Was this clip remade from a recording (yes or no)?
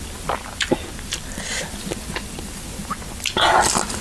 no